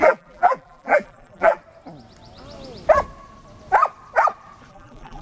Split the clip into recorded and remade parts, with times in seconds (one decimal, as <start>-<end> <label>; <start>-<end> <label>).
0.0-1.6 remade; 1.6-4.7 recorded; 4.7-5.2 remade